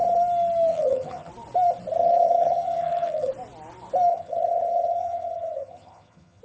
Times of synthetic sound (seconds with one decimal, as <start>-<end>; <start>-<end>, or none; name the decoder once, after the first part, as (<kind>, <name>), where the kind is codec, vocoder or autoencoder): 0.7-1.3 (vocoder, HiFi-GAN); 2.0-3.3; 4.1-6.4